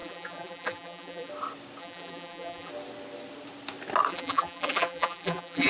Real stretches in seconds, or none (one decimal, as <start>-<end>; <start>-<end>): 1.3-1.8; 2.7-4.1